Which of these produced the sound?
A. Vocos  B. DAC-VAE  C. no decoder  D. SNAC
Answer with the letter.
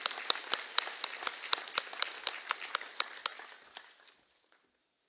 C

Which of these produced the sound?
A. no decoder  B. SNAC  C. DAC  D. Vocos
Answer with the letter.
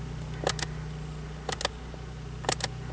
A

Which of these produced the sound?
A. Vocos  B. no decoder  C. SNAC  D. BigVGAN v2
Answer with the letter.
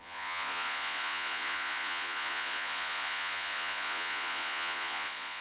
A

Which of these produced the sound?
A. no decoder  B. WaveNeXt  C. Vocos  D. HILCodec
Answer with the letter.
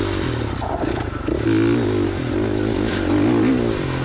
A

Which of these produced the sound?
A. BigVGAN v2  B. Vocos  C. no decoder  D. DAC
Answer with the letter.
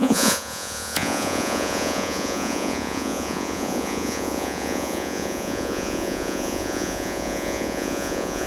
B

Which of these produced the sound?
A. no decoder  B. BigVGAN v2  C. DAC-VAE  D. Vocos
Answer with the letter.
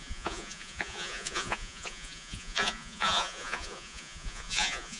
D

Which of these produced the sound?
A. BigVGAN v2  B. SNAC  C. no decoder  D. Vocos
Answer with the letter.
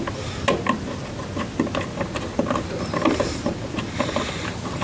C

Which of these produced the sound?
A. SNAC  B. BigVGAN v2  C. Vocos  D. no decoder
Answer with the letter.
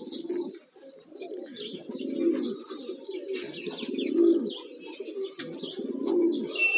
D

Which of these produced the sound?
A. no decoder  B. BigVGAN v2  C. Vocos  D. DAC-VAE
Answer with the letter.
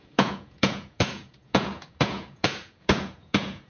C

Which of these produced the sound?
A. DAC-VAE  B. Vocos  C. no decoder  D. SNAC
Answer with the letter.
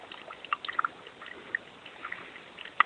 C